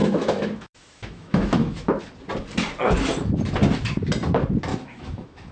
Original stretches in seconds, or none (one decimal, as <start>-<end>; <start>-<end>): 2.0-4.7